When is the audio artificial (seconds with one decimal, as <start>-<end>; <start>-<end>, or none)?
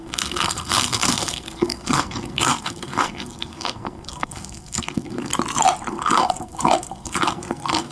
0.0-5.3; 5.9-7.9